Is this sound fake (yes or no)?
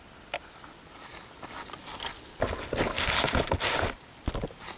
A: no